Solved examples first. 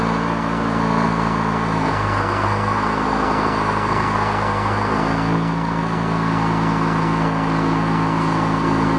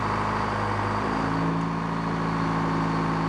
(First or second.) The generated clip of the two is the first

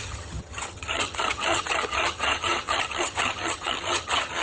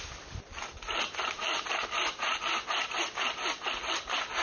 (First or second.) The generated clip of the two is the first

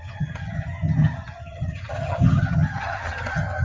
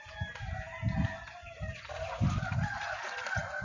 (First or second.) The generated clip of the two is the first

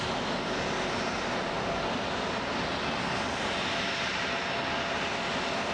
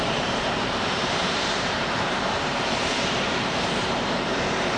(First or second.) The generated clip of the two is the second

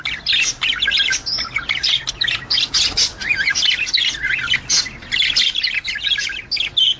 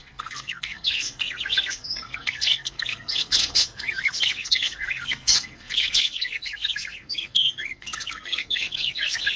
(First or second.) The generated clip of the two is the second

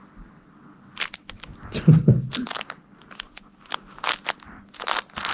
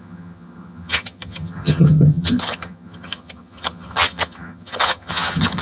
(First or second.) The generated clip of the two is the second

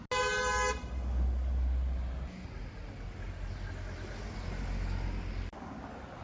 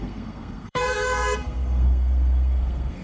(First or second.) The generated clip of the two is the second